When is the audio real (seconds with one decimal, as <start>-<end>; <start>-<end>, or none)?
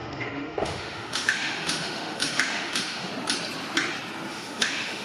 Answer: 3.1-4.3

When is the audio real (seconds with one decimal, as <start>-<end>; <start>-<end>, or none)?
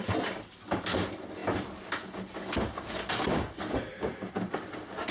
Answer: 0.0-5.1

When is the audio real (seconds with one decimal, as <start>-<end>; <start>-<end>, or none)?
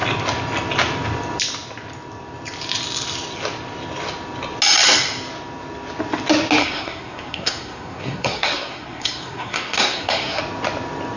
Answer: 0.0-6.6; 10.4-11.2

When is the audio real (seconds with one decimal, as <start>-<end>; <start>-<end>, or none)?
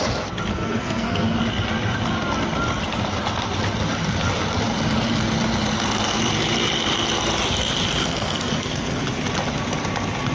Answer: 0.0-0.5; 1.4-8.0; 9.0-10.3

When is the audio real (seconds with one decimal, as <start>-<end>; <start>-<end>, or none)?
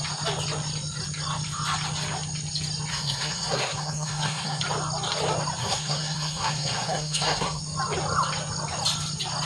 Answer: 0.0-2.9; 4.6-5.6; 7.6-9.5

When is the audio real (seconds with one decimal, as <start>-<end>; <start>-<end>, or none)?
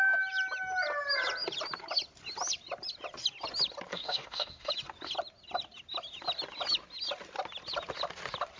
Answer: 0.0-3.9; 4.7-8.6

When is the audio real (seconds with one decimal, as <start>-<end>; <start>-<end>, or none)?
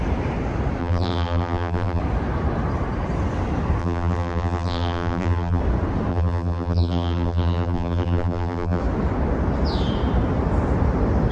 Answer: 0.0-0.8; 2.0-3.8; 5.6-6.1; 8.8-11.3